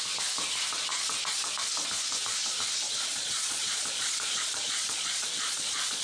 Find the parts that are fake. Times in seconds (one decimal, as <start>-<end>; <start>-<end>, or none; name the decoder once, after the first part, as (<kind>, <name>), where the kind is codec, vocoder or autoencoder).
0.9-1.5 (vocoder, Vocos); 3.1-6.0